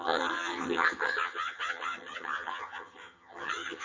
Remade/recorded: remade